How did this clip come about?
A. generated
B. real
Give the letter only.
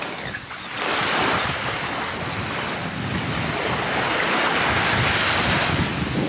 B